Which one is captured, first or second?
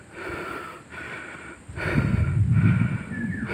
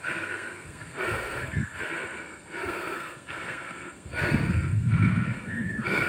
first